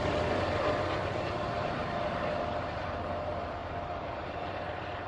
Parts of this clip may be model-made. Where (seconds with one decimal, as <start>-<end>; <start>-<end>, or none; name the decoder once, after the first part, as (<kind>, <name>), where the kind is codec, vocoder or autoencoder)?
0.0-5.1 (vocoder, BigVGAN v2)